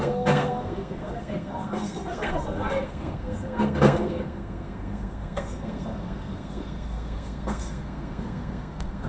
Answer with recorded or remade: remade